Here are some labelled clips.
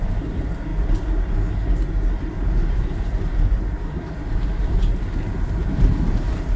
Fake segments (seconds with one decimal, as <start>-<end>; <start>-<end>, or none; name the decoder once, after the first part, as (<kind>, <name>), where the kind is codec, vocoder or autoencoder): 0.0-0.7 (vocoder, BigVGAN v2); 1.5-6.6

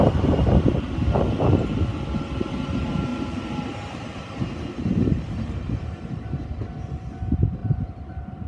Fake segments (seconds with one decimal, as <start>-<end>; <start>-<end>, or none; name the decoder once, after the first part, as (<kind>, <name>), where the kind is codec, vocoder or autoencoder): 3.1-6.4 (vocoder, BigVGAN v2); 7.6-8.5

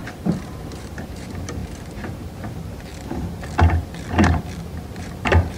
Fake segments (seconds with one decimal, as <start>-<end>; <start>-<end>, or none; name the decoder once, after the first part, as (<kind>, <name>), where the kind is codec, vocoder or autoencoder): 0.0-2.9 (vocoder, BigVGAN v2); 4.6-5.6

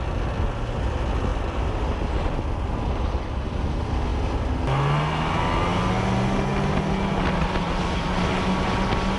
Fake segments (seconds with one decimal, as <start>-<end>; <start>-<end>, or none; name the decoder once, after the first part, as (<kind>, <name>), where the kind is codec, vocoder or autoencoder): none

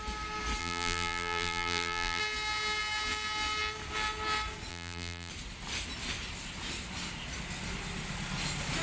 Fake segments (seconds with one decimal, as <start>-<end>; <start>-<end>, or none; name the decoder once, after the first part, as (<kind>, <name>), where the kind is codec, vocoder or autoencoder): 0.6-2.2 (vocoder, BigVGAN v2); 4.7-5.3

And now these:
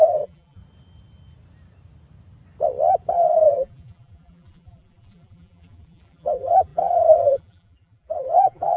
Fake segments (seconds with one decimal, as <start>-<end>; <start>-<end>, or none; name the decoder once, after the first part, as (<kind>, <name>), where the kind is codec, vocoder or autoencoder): 0.0-0.6 (vocoder, BigVGAN v2); 3.1-8.8